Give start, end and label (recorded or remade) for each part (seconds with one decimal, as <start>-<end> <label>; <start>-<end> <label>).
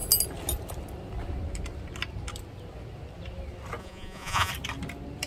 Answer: 0.0-3.8 recorded; 3.8-4.5 remade; 4.5-5.3 recorded